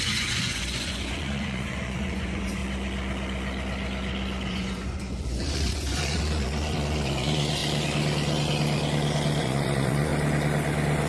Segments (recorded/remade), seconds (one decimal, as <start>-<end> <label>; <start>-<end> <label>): 0.0-2.6 remade; 2.6-4.5 recorded; 4.5-7.6 remade; 7.6-9.4 recorded; 9.4-10.1 remade; 10.1-11.1 recorded